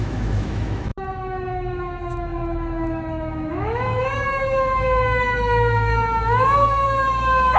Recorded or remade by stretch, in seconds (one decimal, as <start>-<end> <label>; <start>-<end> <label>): 0.0-7.6 remade